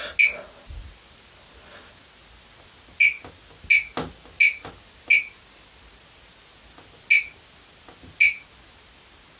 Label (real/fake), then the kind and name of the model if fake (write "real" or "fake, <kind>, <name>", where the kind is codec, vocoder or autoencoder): real